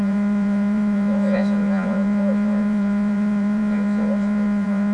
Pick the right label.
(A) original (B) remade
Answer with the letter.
B